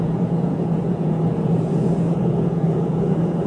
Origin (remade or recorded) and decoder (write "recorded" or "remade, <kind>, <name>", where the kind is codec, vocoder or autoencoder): remade, vocoder, Vocos